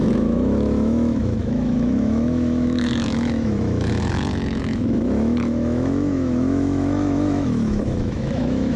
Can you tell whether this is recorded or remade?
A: remade